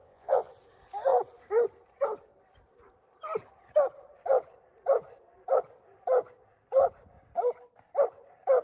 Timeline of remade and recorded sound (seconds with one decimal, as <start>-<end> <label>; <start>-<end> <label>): 0.0-0.5 remade; 0.5-8.6 recorded